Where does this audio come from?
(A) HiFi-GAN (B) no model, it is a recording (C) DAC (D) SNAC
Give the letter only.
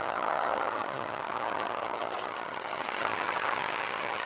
A